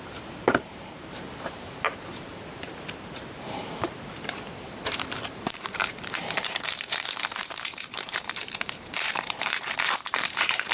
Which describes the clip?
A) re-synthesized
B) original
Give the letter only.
A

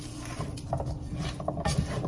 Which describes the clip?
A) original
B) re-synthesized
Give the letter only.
A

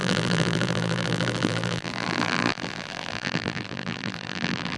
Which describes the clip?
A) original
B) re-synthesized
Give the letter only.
B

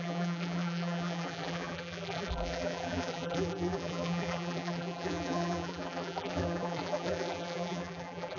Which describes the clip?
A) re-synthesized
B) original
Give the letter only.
A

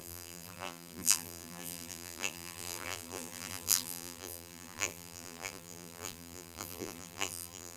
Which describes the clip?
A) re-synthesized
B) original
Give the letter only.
A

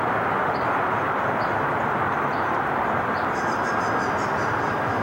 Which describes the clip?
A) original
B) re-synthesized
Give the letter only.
B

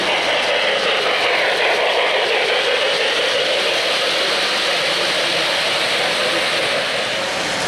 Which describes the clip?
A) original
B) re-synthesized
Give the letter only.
A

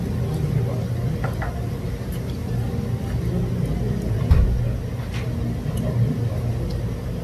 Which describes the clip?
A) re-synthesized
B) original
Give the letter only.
B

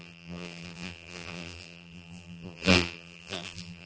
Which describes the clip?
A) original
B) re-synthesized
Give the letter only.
B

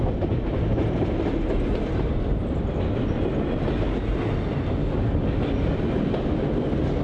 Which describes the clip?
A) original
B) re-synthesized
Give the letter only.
A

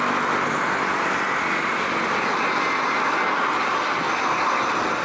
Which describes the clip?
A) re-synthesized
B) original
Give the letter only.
B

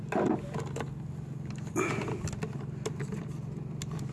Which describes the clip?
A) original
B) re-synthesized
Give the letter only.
A